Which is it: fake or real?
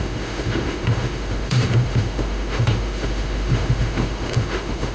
fake